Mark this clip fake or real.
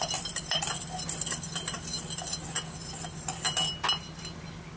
real